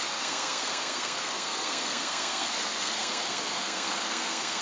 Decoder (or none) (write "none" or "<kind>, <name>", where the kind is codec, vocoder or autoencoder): codec, SNAC